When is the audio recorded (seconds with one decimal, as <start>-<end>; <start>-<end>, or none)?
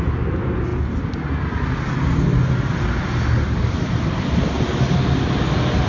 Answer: 0.0-5.9